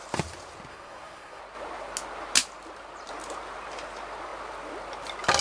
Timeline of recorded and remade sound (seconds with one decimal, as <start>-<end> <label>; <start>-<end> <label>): 0.0-0.7 recorded; 0.7-1.4 remade; 1.4-5.4 recorded